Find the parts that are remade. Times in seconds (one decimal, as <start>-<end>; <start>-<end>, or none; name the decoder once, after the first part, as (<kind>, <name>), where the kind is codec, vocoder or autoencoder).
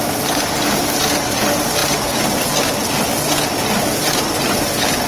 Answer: 1.8-5.1 (vocoder, BigVGAN v2)